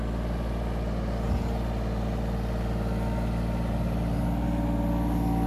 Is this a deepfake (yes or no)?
no